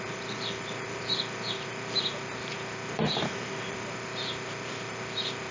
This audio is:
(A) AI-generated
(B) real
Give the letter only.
A